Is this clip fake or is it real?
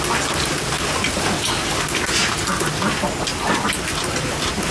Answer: real